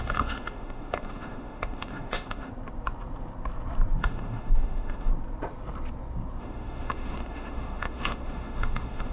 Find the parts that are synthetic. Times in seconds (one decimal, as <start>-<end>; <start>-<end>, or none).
0.0-2.5; 4.0-5.1; 6.4-9.1